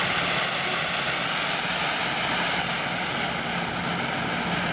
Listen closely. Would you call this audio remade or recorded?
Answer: recorded